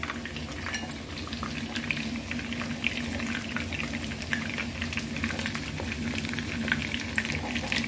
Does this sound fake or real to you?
real